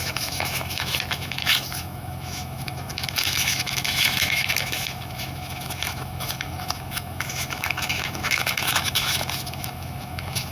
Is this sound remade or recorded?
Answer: remade